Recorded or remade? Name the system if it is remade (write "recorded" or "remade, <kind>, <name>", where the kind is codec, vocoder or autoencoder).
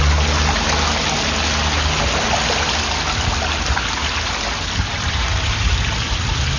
recorded